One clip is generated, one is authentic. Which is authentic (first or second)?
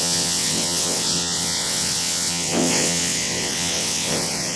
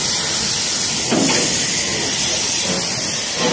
second